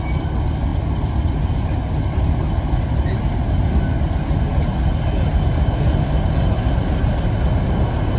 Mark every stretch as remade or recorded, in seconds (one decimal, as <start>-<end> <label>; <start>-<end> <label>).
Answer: 0.0-8.2 recorded

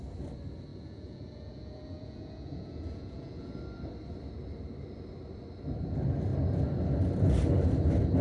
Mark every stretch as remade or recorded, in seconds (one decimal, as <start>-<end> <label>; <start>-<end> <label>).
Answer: 0.0-0.7 recorded; 0.7-3.5 remade; 3.5-8.2 recorded

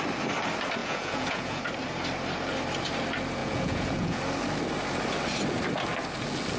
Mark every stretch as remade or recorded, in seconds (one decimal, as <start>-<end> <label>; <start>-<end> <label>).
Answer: 0.0-0.8 recorded; 0.8-1.6 remade; 1.6-3.4 recorded; 3.4-4.2 remade; 4.2-6.6 recorded

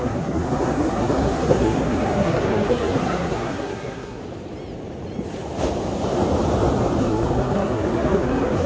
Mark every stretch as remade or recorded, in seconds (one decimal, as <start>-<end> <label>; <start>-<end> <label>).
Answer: 0.0-4.2 remade; 4.2-7.0 recorded; 7.0-8.7 remade

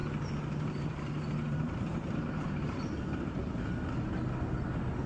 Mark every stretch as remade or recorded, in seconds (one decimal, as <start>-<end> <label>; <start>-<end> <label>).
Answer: 0.0-3.0 remade; 3.0-5.1 recorded

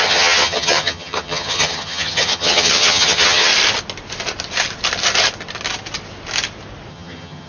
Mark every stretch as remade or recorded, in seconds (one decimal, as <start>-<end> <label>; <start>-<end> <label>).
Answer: 0.0-3.5 remade; 3.5-6.9 recorded; 6.9-7.5 remade

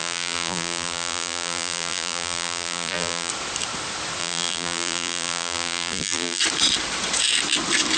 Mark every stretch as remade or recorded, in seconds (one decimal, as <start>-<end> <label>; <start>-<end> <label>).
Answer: 0.0-3.3 remade; 3.3-4.2 recorded; 4.2-6.4 remade; 6.4-8.0 recorded

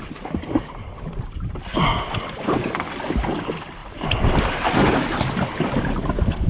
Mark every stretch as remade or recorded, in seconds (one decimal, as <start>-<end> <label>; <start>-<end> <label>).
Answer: 0.0-6.5 recorded